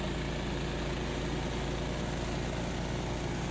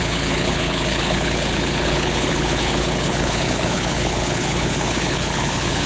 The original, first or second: first